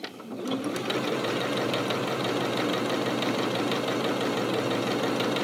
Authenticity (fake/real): real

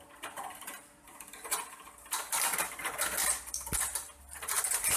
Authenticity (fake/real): real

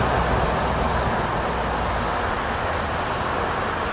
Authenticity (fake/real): real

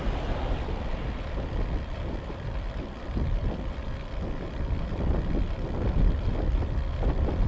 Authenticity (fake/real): real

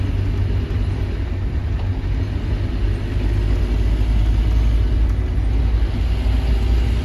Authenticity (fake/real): real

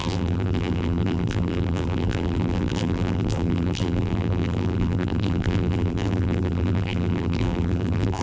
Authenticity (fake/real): fake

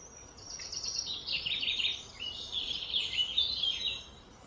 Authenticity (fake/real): real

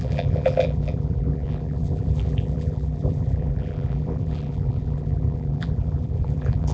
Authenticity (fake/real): fake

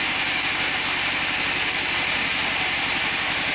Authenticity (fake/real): real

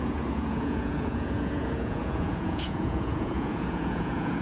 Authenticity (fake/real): fake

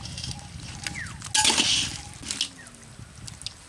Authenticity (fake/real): real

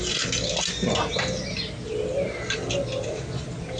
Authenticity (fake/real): real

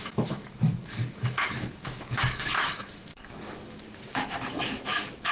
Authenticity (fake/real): fake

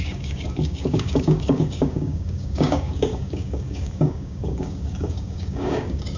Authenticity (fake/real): fake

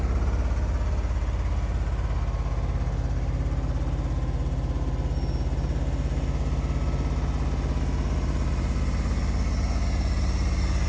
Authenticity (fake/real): real